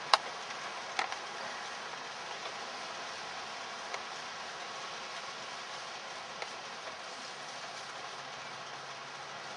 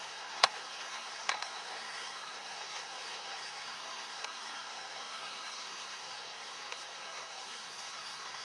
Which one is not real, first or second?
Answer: second